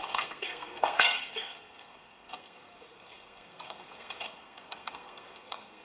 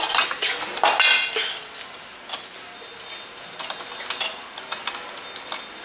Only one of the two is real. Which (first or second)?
second